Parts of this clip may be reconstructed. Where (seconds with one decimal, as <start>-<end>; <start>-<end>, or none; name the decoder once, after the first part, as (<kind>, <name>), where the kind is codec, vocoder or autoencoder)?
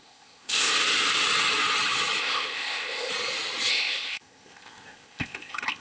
0.0-0.7 (codec, ZipCodec); 2.2-3.1; 3.7-5.8